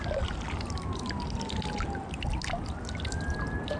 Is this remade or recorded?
recorded